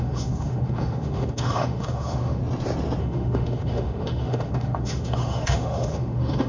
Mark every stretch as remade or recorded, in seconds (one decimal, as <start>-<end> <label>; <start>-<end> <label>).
0.0-2.4 remade; 2.4-3.0 recorded; 3.0-6.5 remade